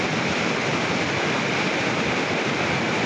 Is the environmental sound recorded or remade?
recorded